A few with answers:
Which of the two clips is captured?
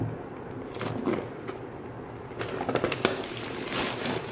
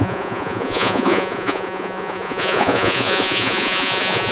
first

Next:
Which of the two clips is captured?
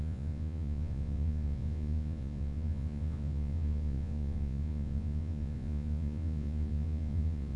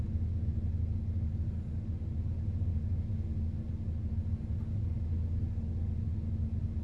second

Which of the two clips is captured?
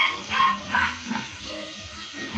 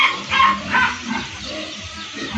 second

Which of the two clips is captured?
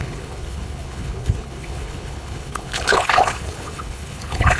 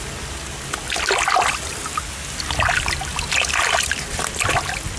second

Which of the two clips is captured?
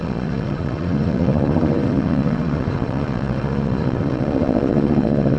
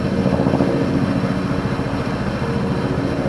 second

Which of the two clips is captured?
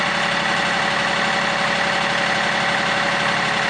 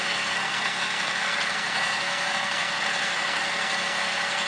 first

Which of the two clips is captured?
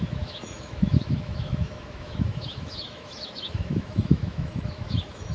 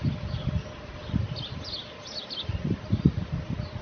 second